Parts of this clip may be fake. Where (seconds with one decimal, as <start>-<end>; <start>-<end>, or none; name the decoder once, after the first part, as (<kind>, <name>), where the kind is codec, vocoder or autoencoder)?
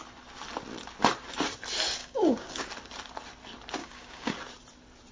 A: 2.0-2.7 (codec, DAC); 3.8-4.3